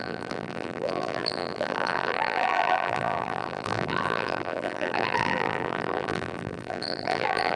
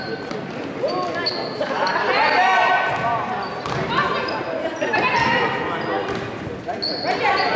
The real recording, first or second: second